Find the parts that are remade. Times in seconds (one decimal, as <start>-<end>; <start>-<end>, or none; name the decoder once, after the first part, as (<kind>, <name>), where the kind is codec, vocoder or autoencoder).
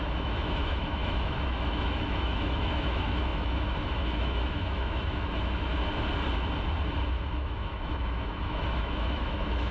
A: 0.0-5.7 (autoencoder, DAC-VAE); 7.4-9.7